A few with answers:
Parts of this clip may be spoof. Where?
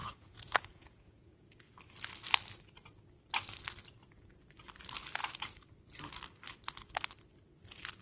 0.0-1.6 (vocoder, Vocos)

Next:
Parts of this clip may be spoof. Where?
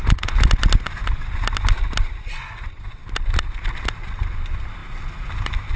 none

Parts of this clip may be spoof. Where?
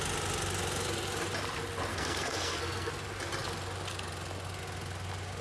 1.9-2.9 (codec, SNAC)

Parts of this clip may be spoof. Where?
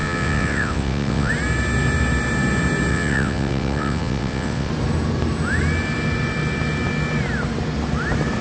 0.0-1.3 (vocoder, WaveNeXt); 2.9-4.7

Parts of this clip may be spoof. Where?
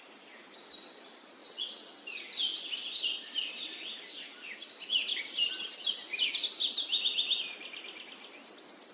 1.4-1.9 (vocoder, WaveNeXt); 4.1-4.7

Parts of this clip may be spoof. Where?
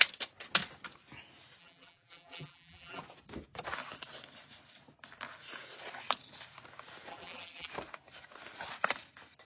1.6-3.0 (vocoder, BigVGAN v2); 7.1-7.7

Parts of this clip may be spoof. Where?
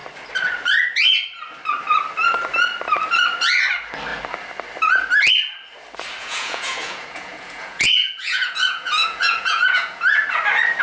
6.2-10.2 (vocoder, Vocos)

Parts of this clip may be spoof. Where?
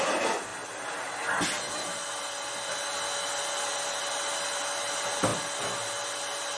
none